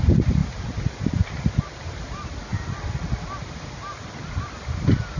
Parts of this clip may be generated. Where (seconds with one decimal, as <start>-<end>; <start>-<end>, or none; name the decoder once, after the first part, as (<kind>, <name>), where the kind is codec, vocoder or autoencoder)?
none